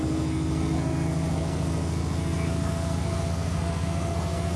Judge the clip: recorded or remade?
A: remade